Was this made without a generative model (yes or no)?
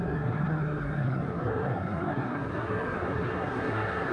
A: no